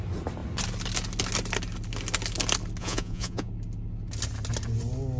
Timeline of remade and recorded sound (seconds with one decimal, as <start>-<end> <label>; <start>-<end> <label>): 0.0-2.8 recorded; 2.8-3.5 remade; 3.5-5.2 recorded

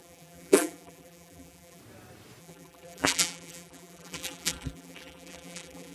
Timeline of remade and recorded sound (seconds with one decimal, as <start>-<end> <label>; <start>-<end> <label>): 0.0-1.8 remade; 1.8-2.4 recorded; 2.4-5.9 remade

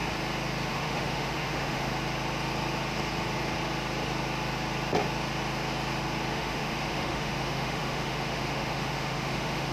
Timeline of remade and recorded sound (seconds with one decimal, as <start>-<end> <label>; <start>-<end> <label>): 0.0-0.7 recorded; 0.7-1.9 remade; 1.9-6.3 recorded; 6.3-9.7 remade

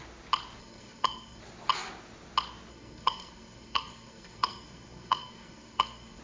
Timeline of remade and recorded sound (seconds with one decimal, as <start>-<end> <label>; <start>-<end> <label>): 0.0-0.6 recorded; 0.6-1.4 remade; 1.4-2.7 recorded; 2.7-6.2 remade

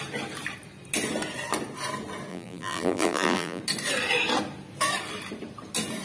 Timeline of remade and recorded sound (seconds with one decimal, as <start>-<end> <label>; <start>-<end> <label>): 0.0-2.3 recorded; 2.3-3.6 remade; 3.6-6.0 recorded

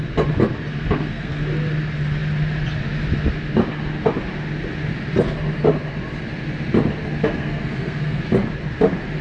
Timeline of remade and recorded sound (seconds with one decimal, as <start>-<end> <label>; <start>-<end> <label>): 0.0-0.7 recorded; 0.7-1.4 remade; 1.4-7.2 recorded; 7.2-8.2 remade; 8.2-9.2 recorded

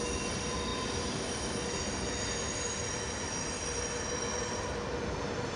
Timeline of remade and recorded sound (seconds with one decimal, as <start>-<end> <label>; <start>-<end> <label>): 0.0-5.6 recorded